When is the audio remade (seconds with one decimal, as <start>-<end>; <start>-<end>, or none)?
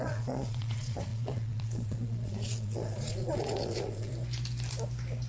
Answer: 0.0-4.1